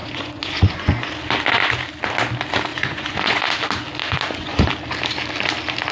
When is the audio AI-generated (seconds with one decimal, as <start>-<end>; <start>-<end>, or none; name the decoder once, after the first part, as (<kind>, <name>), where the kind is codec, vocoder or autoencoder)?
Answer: 0.0-1.1 (vocoder, Vocos); 2.7-3.5; 4.0-4.7